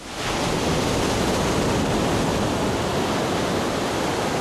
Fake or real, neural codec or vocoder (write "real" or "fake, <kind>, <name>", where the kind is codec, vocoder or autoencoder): real